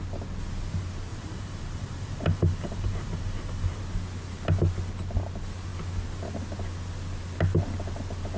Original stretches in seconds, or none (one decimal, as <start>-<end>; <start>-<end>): 0.0-1.1; 3.8-8.4